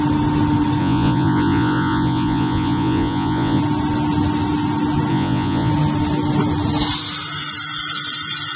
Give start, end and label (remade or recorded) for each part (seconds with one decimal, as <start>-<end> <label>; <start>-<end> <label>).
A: 0.0-0.8 recorded; 0.8-3.6 remade; 3.6-5.1 recorded; 5.1-5.7 remade; 5.7-8.6 recorded